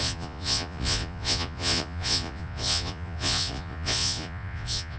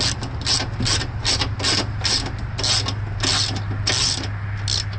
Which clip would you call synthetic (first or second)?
first